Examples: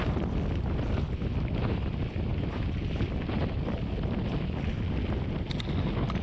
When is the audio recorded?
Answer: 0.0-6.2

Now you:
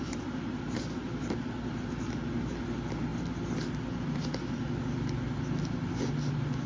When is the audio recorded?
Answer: 0.0-6.7